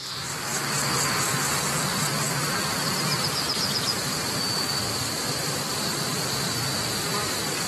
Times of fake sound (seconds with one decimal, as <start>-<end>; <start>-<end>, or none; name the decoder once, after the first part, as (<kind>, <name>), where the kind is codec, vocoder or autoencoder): 0.0-0.5 (vocoder, BigVGAN v2); 5.1-7.7